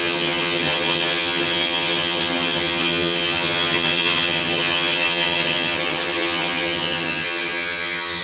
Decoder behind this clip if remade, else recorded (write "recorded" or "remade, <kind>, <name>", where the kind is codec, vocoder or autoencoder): remade, vocoder, HiFi-GAN